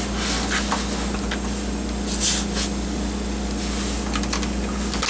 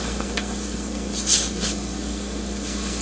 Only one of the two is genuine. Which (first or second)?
first